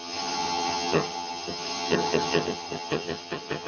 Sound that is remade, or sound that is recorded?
remade